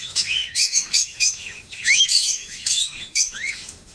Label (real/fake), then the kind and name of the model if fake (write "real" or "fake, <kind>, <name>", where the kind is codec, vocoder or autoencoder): fake, autoencoder, DAC-VAE